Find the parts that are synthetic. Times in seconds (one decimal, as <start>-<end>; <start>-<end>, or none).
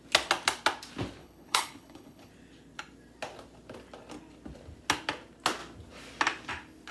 1.2-2.3